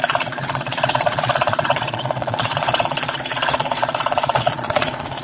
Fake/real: fake